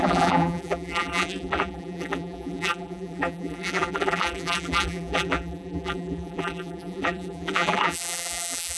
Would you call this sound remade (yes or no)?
yes